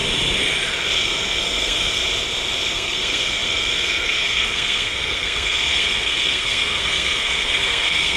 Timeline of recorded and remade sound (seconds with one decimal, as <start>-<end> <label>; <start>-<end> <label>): 0.0-1.0 recorded; 1.0-2.0 remade; 2.0-2.7 recorded; 2.7-8.2 remade

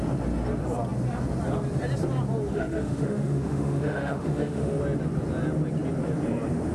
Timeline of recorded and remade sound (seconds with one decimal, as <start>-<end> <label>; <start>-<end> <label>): 0.0-2.5 recorded; 2.5-4.8 remade; 4.8-6.7 recorded

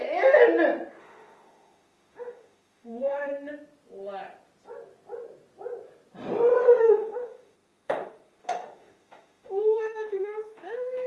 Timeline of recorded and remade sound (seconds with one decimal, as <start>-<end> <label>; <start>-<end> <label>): 0.0-1.0 recorded; 1.0-3.3 remade; 3.3-6.8 recorded; 6.8-11.1 remade